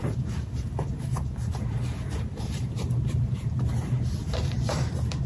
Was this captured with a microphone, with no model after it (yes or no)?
no